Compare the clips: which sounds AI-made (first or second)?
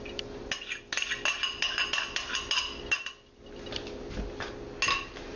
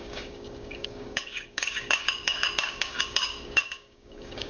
second